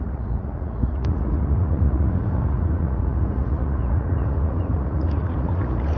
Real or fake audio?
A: fake